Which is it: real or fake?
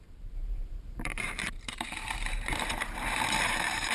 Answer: fake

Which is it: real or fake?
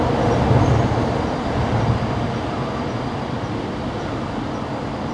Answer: real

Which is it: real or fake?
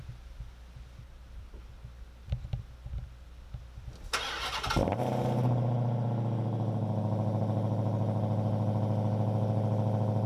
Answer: real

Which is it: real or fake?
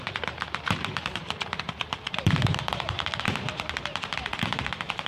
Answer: fake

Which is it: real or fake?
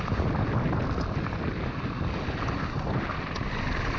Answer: real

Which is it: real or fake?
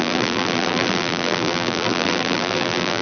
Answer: fake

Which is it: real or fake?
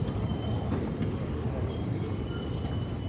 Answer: fake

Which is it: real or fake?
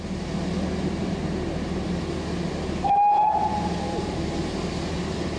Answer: real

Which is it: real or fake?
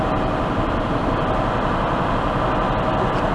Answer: real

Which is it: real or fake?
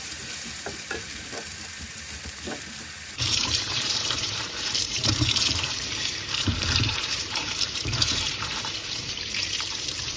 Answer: fake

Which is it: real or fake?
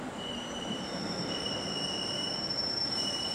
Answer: fake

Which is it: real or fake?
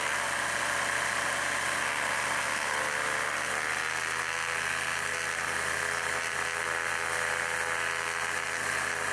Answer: real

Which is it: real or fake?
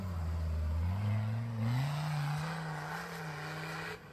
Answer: real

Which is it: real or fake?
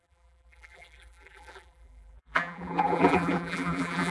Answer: fake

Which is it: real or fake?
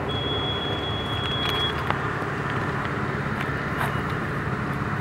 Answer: fake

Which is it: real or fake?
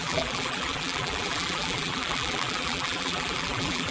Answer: fake